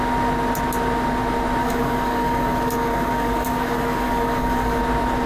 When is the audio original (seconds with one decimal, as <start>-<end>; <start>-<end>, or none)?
0.0-1.6; 4.8-5.3